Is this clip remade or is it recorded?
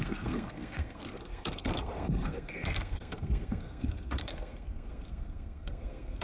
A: remade